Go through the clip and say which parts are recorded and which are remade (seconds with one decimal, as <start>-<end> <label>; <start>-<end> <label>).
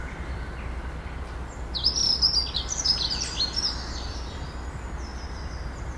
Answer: 0.0-6.0 recorded